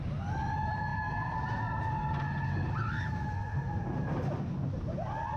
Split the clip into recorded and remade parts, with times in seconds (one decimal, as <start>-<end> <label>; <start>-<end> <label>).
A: 0.0-5.4 recorded